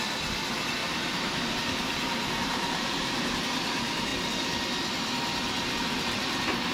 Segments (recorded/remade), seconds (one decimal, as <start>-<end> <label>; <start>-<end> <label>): 0.0-0.8 recorded; 0.8-3.3 remade; 3.3-6.7 recorded